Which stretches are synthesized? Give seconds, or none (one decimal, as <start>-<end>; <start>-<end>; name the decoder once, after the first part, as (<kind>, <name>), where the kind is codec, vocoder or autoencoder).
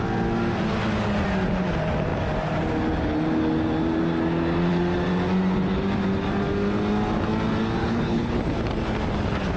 7.8-8.4 (codec, HILCodec)